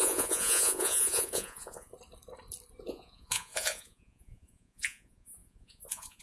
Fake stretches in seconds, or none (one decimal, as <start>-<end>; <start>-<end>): 0.0-1.9; 2.9-6.2